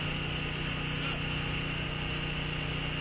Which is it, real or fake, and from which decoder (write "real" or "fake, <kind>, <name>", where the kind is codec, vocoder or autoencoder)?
real